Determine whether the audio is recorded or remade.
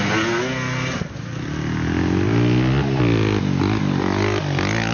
recorded